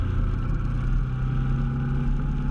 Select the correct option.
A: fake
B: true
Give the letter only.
B